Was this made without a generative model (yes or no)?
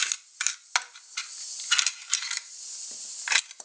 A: yes